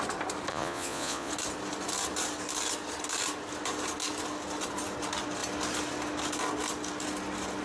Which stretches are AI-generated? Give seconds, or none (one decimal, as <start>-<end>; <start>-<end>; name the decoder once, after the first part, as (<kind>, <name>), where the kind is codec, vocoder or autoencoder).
0.5-1.3 (vocoder, Vocos)